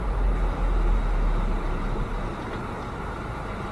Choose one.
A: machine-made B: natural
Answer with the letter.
B